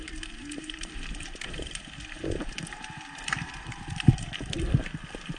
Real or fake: fake